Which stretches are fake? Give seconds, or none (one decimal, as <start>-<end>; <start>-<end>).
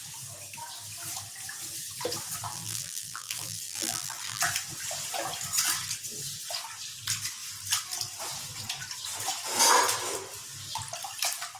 2.5-4.4